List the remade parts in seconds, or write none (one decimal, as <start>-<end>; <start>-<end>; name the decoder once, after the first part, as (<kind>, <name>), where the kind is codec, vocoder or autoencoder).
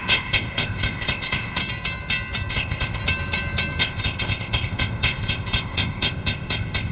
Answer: 0.0-1.6 (codec, ZipCodec); 2.5-3.0; 3.8-6.9